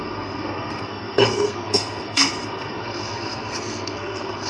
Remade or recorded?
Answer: remade